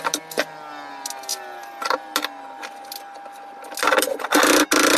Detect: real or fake real